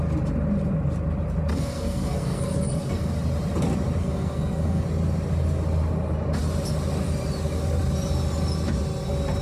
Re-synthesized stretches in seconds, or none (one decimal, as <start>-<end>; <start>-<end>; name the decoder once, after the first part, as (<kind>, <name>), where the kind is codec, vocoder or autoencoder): 1.5-3.1 (codec, SNAC); 4.0-4.8